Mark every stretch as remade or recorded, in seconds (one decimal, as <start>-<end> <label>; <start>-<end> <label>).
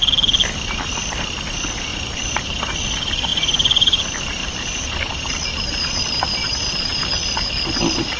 0.0-1.9 recorded; 1.9-2.6 remade; 2.6-3.3 recorded; 3.3-4.0 remade; 4.0-4.4 recorded; 4.4-5.3 remade; 5.3-6.4 recorded; 6.4-7.2 remade; 7.2-8.2 recorded